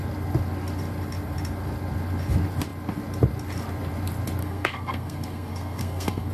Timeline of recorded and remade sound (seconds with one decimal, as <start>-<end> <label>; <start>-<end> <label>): 0.0-4.4 recorded; 4.4-6.3 remade